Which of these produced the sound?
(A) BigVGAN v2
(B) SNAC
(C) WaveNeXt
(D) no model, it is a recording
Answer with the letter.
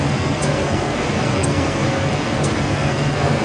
B